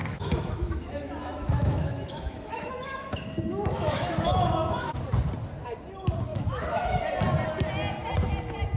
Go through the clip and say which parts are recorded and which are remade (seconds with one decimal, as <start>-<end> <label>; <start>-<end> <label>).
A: 0.0-5.0 remade; 5.0-6.3 recorded; 6.3-7.0 remade; 7.0-8.8 recorded